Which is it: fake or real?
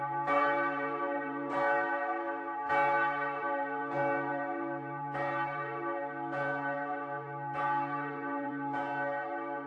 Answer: fake